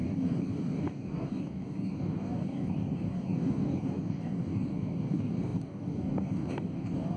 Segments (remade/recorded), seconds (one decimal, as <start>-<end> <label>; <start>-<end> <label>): 0.0-7.2 remade

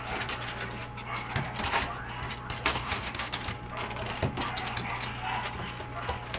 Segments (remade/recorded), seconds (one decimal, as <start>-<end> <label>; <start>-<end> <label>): 0.0-2.7 recorded; 2.7-3.4 remade; 3.4-6.4 recorded